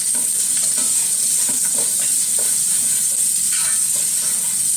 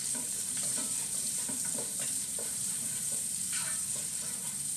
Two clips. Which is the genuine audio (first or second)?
first